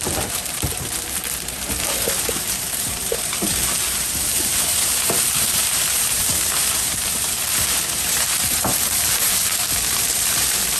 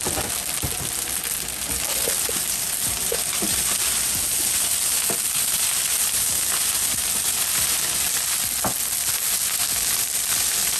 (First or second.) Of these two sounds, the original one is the second